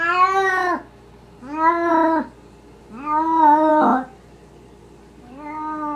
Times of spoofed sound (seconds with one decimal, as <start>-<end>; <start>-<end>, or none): none